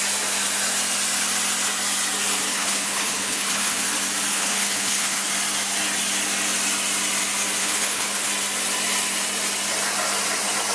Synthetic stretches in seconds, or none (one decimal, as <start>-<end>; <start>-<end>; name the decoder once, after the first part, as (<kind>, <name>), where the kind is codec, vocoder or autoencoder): 2.5-3.8 (codec, HILCodec); 4.3-5.3; 7.6-8.3